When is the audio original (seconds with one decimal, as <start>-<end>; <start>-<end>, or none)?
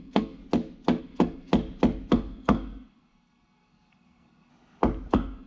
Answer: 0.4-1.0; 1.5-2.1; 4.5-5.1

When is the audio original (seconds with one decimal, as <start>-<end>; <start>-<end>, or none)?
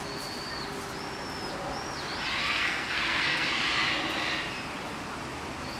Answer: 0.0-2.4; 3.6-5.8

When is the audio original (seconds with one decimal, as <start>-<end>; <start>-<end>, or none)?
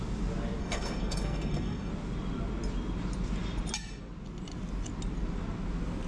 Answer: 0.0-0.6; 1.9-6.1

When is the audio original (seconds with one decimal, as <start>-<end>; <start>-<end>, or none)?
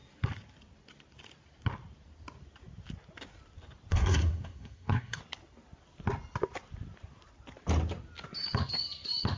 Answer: 0.0-3.9; 5.2-9.4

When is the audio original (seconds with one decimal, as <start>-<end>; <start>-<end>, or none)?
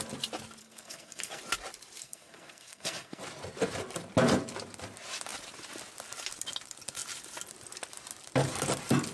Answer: 0.0-0.6; 1.4-2.0; 3.2-9.1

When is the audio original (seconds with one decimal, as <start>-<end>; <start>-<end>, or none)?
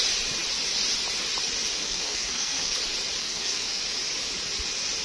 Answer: 0.0-1.8; 2.8-3.2; 3.8-5.0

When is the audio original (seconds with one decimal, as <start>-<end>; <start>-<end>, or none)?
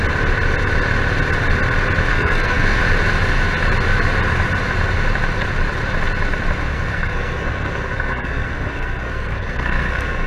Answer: 0.0-2.1; 2.8-6.7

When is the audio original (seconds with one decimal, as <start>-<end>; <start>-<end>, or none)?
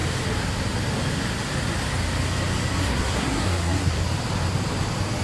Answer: 0.0-2.8; 4.0-5.2